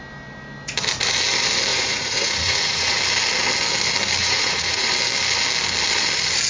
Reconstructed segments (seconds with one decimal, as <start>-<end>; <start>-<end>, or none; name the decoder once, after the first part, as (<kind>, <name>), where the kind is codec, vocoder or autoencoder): 1.7-3.0 (vocoder, Vocos); 4.2-4.9